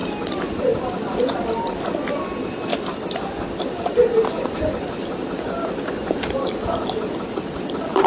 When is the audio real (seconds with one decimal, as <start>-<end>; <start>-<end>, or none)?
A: 0.0-8.1